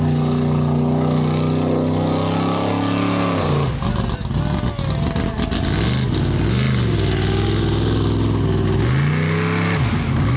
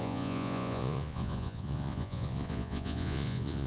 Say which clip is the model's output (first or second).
second